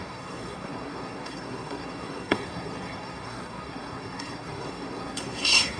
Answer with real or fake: fake